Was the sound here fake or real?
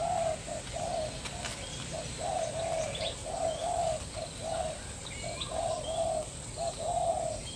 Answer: real